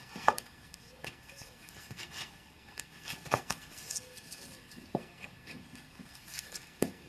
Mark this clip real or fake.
fake